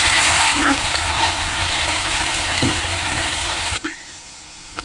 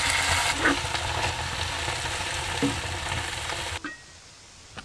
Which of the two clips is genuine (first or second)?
second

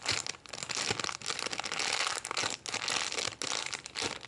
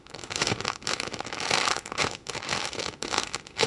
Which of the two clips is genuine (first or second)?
first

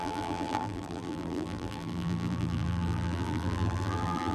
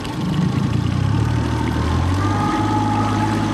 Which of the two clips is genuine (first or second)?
second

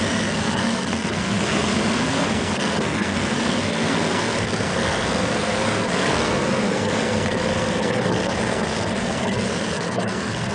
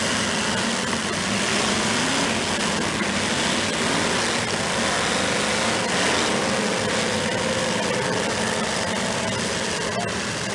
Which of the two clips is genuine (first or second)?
second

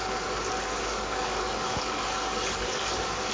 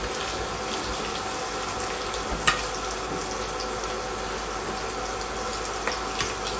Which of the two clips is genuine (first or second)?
second